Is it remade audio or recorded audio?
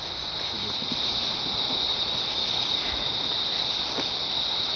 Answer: recorded